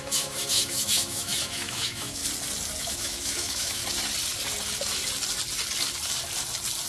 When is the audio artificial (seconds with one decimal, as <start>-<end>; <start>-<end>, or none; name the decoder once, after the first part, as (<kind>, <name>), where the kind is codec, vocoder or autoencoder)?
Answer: 0.0-2.2 (autoencoder, DAC-VAE); 2.8-3.8